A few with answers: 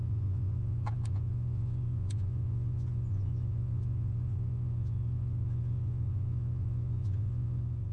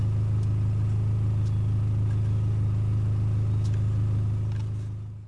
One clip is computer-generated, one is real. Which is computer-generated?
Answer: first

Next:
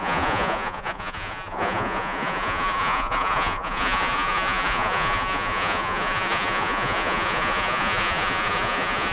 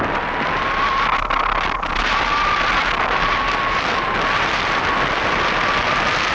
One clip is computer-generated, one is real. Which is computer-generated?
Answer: first